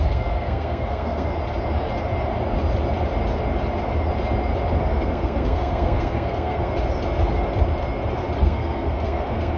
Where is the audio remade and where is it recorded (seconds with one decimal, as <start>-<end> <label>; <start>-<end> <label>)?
0.0-1.3 remade; 1.3-4.8 recorded; 4.8-6.7 remade; 6.7-8.4 recorded; 8.4-9.6 remade